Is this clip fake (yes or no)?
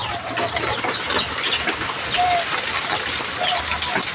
no